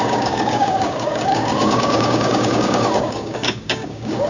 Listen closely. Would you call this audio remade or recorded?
remade